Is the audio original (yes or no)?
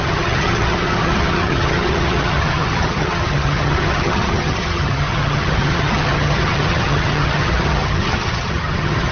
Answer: no